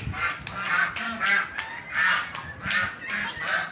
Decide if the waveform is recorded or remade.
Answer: recorded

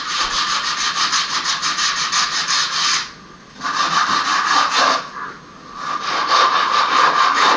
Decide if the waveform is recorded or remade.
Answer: recorded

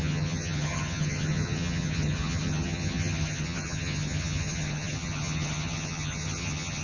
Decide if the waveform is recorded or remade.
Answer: remade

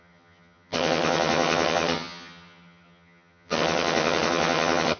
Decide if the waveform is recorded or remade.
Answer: remade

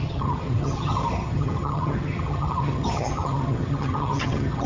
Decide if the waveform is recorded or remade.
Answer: remade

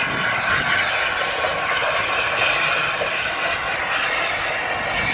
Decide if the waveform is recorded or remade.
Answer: recorded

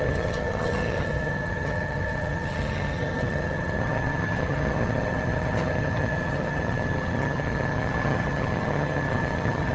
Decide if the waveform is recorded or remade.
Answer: remade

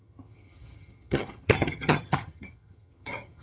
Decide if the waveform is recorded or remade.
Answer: remade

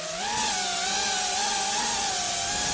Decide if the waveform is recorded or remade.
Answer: recorded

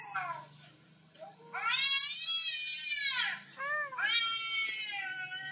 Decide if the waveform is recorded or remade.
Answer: recorded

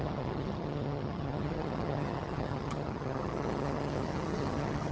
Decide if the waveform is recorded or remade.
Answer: remade